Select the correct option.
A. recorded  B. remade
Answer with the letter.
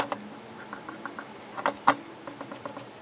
A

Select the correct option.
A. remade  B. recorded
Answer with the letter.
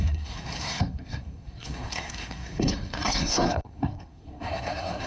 A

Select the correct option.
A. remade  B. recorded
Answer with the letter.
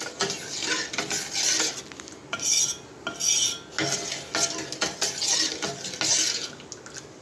B